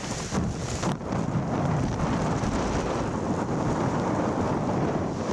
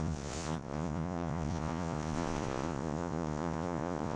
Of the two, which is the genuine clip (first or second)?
first